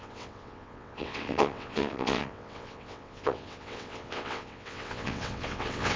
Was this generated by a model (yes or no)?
yes